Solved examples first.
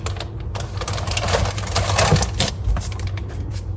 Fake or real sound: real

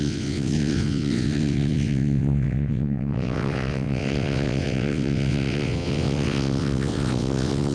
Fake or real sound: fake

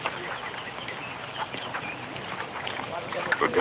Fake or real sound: real